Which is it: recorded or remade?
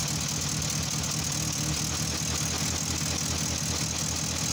recorded